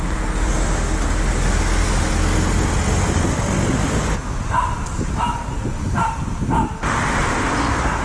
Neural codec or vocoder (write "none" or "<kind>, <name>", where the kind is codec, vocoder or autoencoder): none